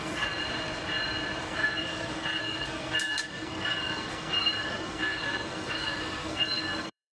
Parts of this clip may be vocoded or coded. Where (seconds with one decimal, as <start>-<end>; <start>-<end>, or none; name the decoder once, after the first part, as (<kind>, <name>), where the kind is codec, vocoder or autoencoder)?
0.0-0.4 (codec, SNAC); 1.4-7.1